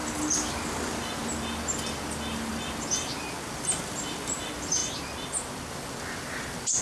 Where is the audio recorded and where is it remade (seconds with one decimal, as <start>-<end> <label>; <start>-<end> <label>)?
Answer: 0.0-6.8 recorded